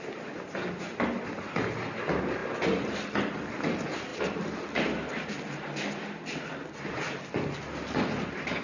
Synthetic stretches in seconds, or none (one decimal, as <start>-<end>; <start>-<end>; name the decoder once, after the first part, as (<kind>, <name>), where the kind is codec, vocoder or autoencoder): 2.4-3.3 (vocoder, BigVGAN v2); 4.1-6.4